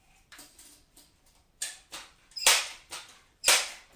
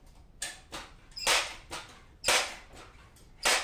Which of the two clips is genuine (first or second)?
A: second